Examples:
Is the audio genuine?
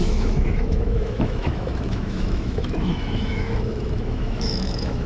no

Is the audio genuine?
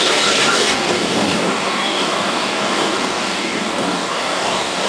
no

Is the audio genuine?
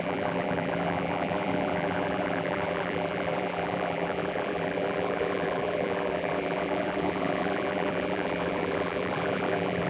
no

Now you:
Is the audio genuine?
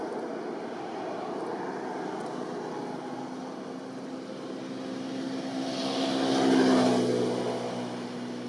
yes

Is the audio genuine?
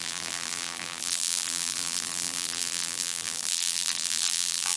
no